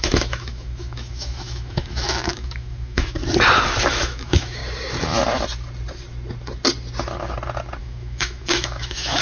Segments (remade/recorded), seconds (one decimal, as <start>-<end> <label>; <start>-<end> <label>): 0.0-3.2 remade; 3.2-3.9 recorded; 3.9-4.6 remade; 4.6-7.8 recorded; 7.8-9.2 remade

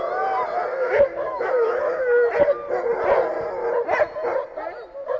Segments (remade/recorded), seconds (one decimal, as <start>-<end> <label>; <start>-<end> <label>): 0.0-0.7 recorded; 0.7-2.3 remade; 2.3-5.2 recorded

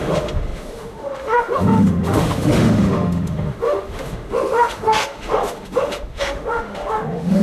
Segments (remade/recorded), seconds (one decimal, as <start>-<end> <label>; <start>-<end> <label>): 0.0-7.4 remade

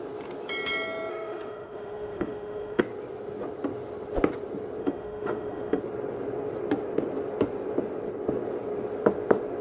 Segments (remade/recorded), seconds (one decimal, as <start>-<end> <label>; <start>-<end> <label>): 0.0-1.1 recorded; 1.1-2.8 remade; 2.8-4.8 recorded; 4.8-5.8 remade; 5.8-9.6 recorded

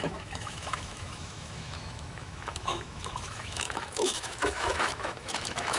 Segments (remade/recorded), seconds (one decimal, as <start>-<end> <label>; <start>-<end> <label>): 0.0-5.8 remade

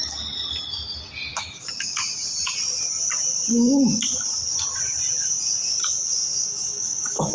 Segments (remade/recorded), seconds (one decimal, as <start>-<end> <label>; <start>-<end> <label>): 0.0-1.3 recorded; 1.3-2.0 remade; 2.0-6.2 recorded; 6.2-7.3 remade